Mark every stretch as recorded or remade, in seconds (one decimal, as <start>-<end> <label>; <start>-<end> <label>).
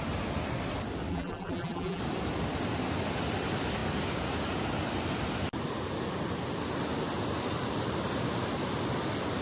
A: 0.0-1.1 recorded; 1.1-2.0 remade; 2.0-9.4 recorded